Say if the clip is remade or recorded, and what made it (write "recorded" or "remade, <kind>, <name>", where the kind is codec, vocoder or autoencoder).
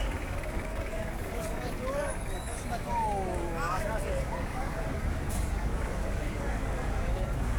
remade, codec, DAC